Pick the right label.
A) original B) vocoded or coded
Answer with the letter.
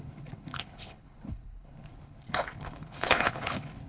B